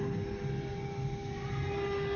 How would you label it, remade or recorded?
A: recorded